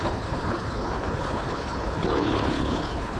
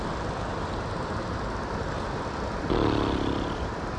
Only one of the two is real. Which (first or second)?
second